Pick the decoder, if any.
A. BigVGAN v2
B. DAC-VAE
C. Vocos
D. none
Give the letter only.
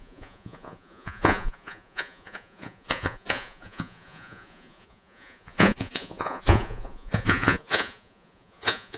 C